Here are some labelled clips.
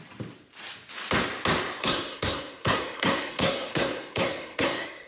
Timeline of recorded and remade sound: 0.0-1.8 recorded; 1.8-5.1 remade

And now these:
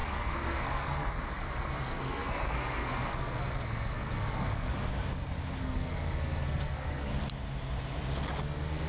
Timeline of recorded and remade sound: 0.0-4.7 remade; 4.7-5.6 recorded; 5.6-7.1 remade; 7.1-8.4 recorded; 8.4-8.9 remade

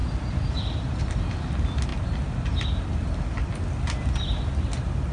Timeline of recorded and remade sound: 0.0-5.1 recorded

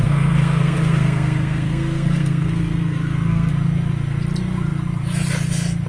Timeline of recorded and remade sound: 0.0-3.5 remade; 3.5-5.9 recorded

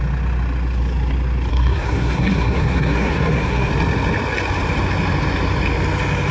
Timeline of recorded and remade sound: 0.0-1.5 recorded; 1.5-3.7 remade; 3.7-6.3 recorded

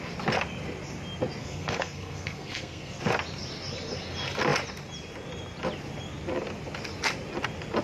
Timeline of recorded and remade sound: 0.0-1.4 recorded; 1.4-3.0 remade; 3.0-7.8 recorded

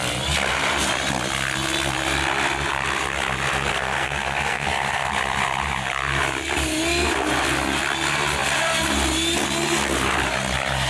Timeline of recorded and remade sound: 0.0-3.7 recorded; 3.7-5.1 remade; 5.1-10.9 recorded